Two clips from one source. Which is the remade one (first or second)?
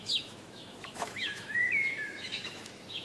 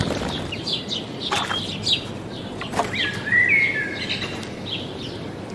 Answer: first